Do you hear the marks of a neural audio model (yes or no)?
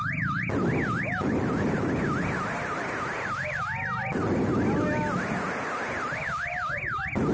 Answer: no